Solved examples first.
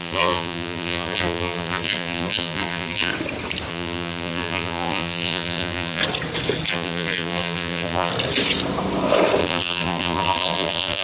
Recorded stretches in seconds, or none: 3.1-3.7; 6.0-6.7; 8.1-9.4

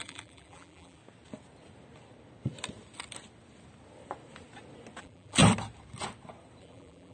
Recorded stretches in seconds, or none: 1.0-5.0; 5.4-6.6

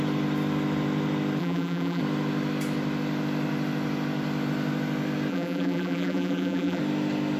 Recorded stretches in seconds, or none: 0.0-1.4; 2.0-5.3; 6.8-7.4

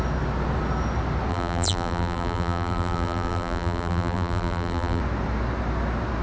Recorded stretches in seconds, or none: 0.0-1.3; 5.0-6.2

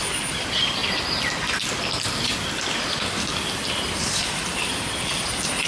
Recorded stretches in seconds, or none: 0.8-2.2

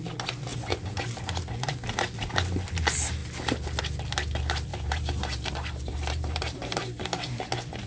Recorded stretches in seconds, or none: 0.0-0.5; 1.0-4.7; 7.5-7.9

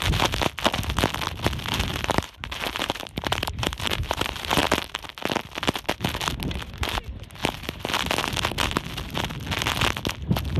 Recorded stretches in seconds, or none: 0.0-1.9; 4.6-7.4; 7.9-10.6